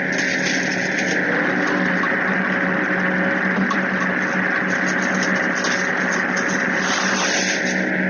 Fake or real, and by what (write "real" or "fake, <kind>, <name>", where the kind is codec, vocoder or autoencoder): real